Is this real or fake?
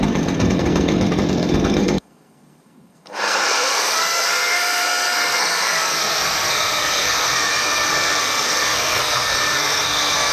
fake